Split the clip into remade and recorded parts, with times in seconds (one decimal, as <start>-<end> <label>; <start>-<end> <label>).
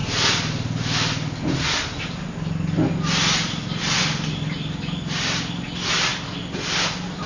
0.0-7.3 recorded